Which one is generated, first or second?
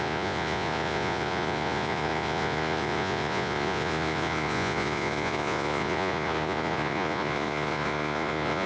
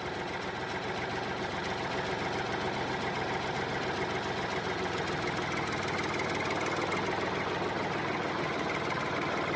first